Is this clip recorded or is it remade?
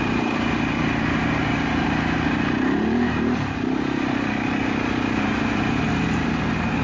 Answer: remade